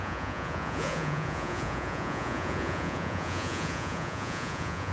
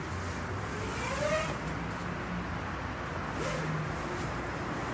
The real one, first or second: second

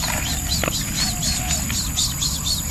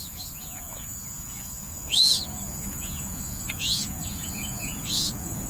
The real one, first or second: first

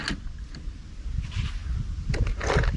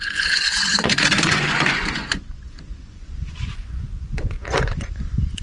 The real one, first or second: first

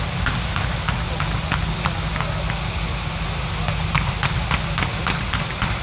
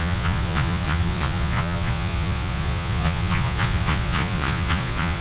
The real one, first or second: first